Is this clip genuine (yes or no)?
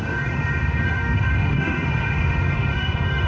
no